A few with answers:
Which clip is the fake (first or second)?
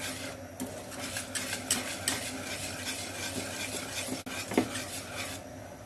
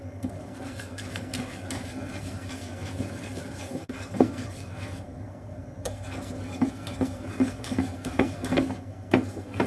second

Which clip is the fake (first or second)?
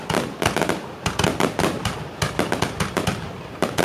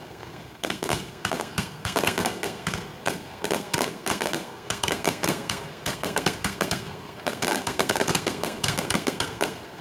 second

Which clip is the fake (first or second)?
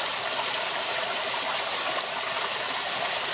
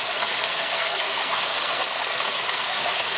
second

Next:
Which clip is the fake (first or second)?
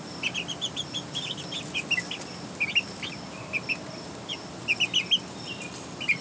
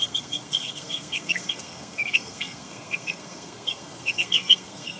second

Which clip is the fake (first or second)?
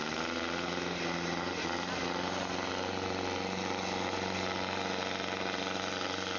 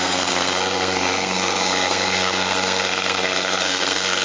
second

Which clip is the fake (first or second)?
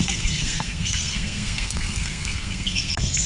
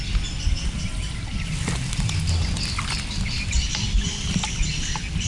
first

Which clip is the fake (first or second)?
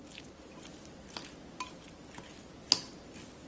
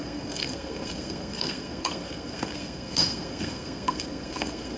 second